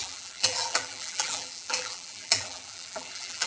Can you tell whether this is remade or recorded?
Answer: remade